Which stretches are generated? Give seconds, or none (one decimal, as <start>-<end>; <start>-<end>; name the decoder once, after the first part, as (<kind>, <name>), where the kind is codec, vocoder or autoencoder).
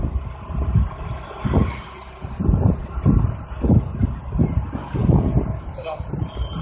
none